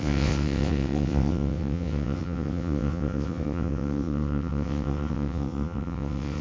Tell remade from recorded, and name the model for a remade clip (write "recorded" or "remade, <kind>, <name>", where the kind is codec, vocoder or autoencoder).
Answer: remade, vocoder, WaveNeXt